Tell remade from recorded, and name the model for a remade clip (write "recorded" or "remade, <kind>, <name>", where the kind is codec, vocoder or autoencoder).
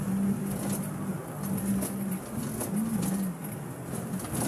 recorded